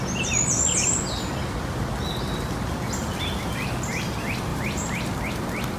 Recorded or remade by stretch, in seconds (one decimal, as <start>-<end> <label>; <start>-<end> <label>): 0.0-4.5 recorded; 4.5-5.1 remade; 5.1-5.8 recorded